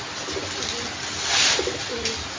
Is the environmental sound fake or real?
real